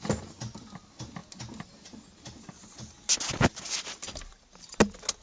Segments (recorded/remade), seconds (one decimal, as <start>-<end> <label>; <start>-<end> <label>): 0.0-5.2 recorded

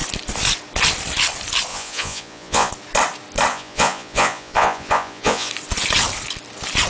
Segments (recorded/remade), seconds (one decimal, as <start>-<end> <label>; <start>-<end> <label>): 0.0-1.7 recorded; 1.7-2.7 remade; 2.7-3.5 recorded; 3.5-5.5 remade; 5.5-6.9 recorded

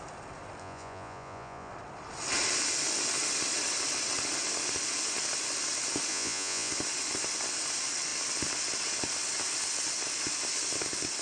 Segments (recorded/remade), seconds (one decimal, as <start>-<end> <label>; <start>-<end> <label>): 0.0-0.6 recorded; 0.6-1.7 remade; 1.7-6.1 recorded; 6.1-6.7 remade; 6.7-11.2 recorded

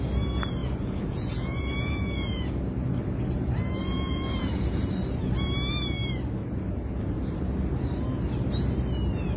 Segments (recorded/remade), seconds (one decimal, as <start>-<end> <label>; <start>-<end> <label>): 0.0-0.6 recorded; 0.6-2.6 remade; 2.6-3.8 recorded; 3.8-4.8 remade; 4.8-9.4 recorded